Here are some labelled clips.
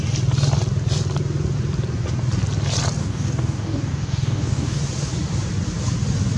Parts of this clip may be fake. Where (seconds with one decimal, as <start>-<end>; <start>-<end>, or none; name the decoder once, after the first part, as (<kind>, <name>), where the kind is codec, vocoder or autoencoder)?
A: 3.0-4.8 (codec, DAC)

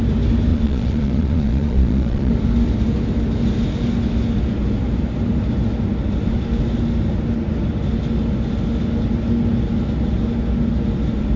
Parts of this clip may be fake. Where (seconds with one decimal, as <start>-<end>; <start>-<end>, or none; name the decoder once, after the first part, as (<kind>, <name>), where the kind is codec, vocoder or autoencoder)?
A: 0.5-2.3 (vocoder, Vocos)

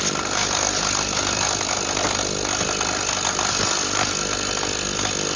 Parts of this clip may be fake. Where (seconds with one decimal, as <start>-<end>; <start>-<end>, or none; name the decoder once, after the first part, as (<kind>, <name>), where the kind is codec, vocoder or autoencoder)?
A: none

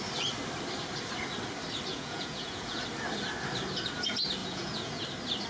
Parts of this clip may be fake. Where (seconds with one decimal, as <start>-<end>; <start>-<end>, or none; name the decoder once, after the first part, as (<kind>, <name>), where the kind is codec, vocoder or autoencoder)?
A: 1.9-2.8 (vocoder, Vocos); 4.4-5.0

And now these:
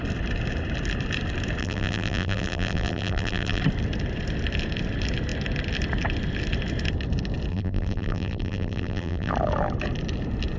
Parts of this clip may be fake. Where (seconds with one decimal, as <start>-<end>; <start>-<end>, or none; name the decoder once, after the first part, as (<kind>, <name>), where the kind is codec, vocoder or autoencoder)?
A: 1.6-3.6 (vocoder, BigVGAN v2); 7.5-9.3

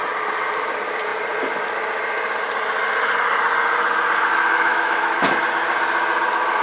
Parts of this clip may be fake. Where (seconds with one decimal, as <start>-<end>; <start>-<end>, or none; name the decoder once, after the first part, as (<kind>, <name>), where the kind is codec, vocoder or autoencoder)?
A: 4.3-5.2 (autoencoder, DAC-VAE)

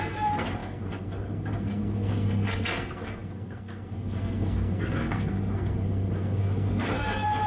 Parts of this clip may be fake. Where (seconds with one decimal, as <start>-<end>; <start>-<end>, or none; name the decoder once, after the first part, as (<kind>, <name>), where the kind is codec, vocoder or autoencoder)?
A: 0.0-7.5 (codec, SNAC)

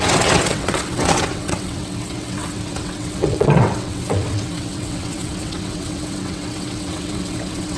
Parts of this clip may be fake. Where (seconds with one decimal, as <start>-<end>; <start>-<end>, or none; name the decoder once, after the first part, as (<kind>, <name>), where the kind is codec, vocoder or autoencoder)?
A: 0.0-7.8 (vocoder, WaveNeXt)